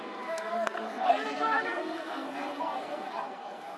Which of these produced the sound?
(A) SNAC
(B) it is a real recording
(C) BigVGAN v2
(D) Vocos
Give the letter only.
A